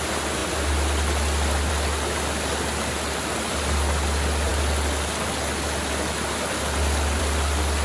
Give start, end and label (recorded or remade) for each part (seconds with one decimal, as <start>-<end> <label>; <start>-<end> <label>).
0.0-7.8 recorded

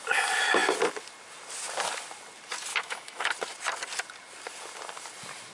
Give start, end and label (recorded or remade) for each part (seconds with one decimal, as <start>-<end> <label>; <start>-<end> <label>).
0.0-2.7 recorded; 2.7-3.3 remade; 3.3-5.5 recorded

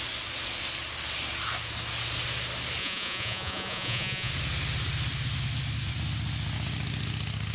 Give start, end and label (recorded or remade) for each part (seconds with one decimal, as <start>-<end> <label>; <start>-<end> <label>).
0.0-2.8 recorded; 2.8-4.3 remade; 4.3-7.5 recorded

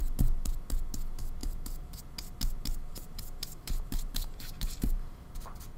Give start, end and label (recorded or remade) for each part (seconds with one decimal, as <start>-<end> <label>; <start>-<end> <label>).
0.0-1.4 recorded; 1.4-2.0 remade; 2.0-2.9 recorded; 2.9-5.3 remade; 5.3-5.8 recorded

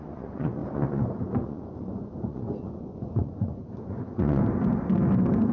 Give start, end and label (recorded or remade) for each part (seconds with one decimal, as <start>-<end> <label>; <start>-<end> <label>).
0.0-4.4 remade; 4.4-5.5 recorded